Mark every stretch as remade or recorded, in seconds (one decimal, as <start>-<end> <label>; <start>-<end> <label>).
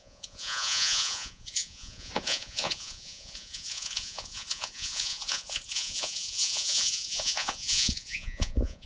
0.0-8.9 remade